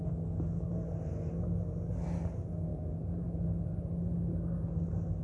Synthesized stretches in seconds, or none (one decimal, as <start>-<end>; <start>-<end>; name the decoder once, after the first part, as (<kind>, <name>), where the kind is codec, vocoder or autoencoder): none